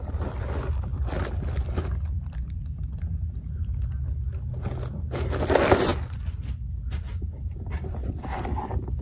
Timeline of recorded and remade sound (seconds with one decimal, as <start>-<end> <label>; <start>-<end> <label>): 0.0-9.0 recorded

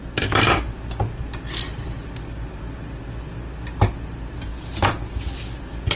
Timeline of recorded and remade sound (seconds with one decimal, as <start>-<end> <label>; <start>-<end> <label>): 0.0-6.0 recorded

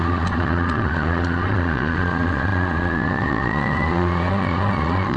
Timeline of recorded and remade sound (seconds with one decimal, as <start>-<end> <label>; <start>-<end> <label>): 0.0-5.2 remade

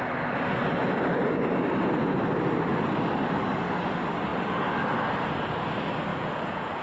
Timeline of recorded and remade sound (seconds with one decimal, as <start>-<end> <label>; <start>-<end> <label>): 0.0-6.1 recorded; 6.1-6.8 remade